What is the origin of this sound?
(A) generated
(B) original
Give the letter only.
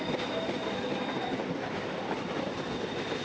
B